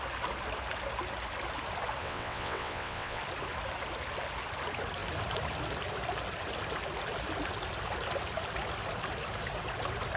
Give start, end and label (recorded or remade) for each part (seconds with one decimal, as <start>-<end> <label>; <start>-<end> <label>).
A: 0.0-2.0 recorded; 2.0-3.2 remade; 3.2-10.2 recorded